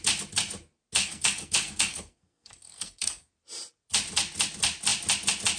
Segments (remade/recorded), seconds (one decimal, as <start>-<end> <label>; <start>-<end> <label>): 0.0-1.0 recorded; 1.0-3.3 remade; 3.3-5.6 recorded

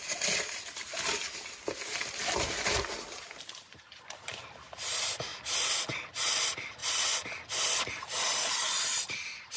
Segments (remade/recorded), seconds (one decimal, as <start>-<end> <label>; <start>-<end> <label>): 0.0-9.6 recorded

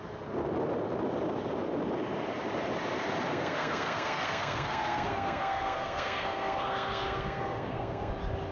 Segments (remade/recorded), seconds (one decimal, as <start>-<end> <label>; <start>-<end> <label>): 0.0-3.3 recorded; 3.3-8.1 remade; 8.1-8.5 recorded

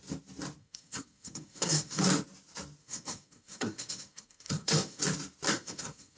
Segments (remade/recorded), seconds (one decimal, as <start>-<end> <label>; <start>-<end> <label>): 0.0-0.6 recorded; 0.6-2.0 remade; 2.0-2.8 recorded; 2.8-5.0 remade; 5.0-5.5 recorded; 5.5-6.2 remade

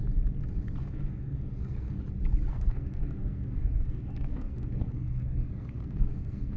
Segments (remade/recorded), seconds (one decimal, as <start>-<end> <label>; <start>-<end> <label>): 0.0-0.8 recorded; 0.8-2.0 remade; 2.0-2.5 recorded; 2.5-6.6 remade

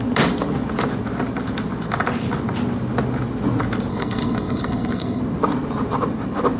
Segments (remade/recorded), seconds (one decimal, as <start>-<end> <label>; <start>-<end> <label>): 0.0-3.9 recorded; 3.9-5.2 remade; 5.2-6.6 recorded